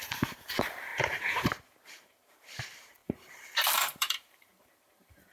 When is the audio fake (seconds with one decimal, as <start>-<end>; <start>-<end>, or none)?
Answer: 0.0-5.3